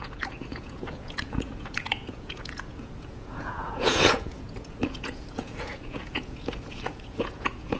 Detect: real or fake fake